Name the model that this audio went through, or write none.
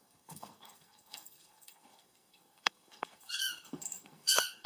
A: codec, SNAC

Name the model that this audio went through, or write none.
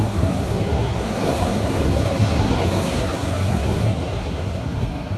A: codec, SNAC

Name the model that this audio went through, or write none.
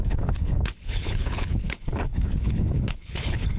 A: codec, HILCodec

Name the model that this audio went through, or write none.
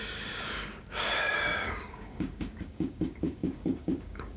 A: codec, DAC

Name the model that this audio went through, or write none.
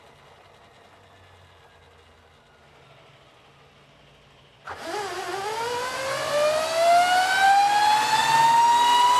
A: none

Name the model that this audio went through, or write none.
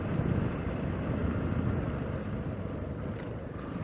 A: none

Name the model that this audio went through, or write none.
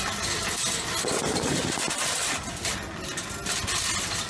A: none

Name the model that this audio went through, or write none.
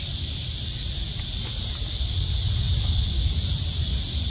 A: none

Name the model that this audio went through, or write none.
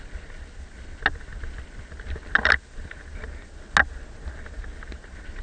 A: none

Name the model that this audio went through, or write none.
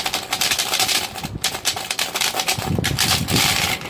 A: none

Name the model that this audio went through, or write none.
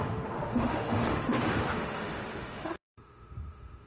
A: autoencoder, DAC-VAE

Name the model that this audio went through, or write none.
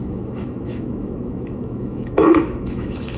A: autoencoder, DAC-VAE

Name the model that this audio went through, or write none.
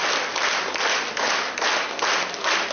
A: none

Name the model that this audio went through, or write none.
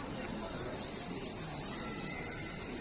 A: none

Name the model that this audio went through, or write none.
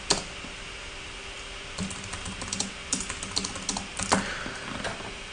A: none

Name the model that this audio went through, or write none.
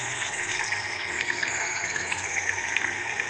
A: codec, SNAC